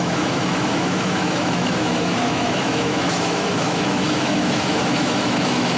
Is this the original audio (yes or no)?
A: no